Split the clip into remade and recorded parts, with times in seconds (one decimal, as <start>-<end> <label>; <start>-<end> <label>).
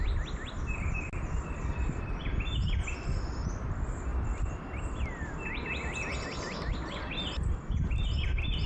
0.0-8.7 recorded